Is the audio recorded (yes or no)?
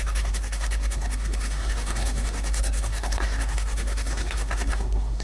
no